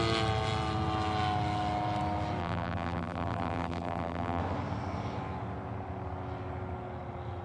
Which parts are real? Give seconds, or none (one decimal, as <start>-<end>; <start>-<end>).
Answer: 0.0-2.4; 4.4-7.4